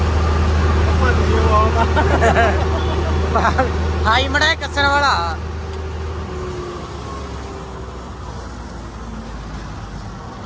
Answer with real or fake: real